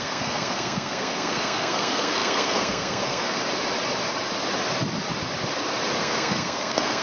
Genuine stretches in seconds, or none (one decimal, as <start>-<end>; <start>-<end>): 3.4-6.0